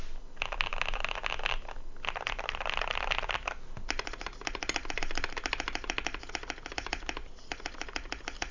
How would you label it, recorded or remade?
recorded